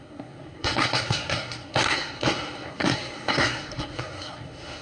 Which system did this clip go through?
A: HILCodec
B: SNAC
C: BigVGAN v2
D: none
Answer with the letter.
B